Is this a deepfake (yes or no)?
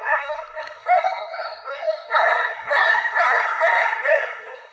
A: yes